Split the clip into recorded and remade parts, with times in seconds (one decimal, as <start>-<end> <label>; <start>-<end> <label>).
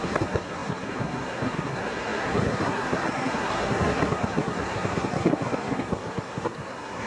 0.0-7.1 remade